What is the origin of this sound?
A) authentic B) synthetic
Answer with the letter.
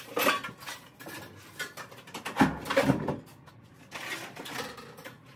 A